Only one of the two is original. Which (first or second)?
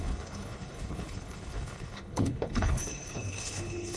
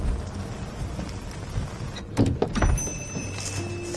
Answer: second